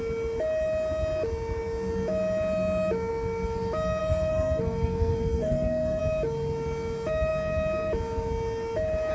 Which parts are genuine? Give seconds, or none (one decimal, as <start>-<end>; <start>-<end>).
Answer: 0.0-4.0; 6.0-9.1